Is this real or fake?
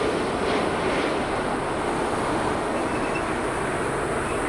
real